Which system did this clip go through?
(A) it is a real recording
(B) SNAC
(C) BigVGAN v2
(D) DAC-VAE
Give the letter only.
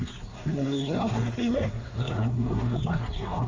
B